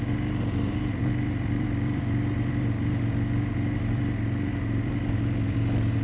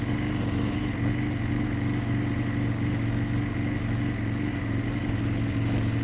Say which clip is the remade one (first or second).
first